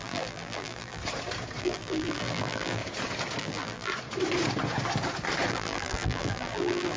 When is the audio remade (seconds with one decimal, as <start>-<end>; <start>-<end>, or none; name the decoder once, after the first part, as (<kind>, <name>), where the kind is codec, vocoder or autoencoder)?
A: 0.0-1.0 (vocoder, BigVGAN v2); 1.6-2.8; 3.4-3.9; 5.5-7.0